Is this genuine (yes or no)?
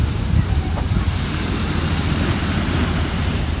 no